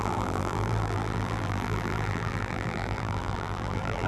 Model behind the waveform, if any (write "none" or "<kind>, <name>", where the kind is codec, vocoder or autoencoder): vocoder, BigVGAN v2